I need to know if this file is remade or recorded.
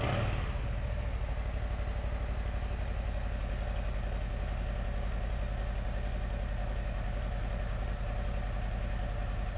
recorded